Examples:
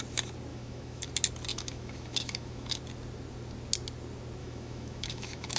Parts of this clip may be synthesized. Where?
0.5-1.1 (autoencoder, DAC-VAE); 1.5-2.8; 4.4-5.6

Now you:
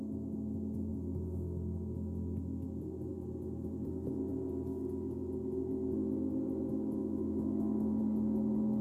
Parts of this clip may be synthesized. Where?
7.0-8.0 (autoencoder, DAC-VAE)

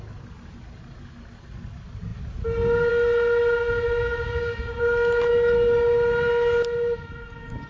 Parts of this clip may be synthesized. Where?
none

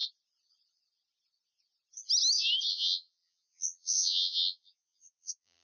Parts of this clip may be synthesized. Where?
2.7-5.6 (vocoder, BigVGAN v2)

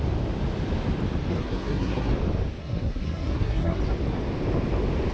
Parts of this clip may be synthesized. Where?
1.3-2.1 (codec, SNAC); 2.6-3.8

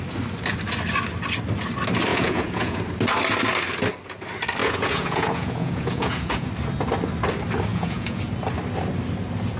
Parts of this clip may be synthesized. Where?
2.1-2.8 (vocoder, Vocos); 4.6-6.5; 7.7-8.2

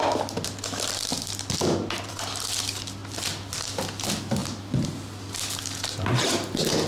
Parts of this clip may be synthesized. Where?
1.1-2.1 (vocoder, BigVGAN v2); 3.0-3.5

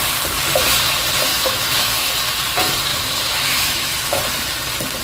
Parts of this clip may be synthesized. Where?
1.3-2.1 (autoencoder, DAC-VAE); 2.9-4.2